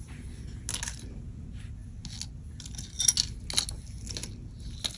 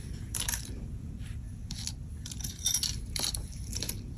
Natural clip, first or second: first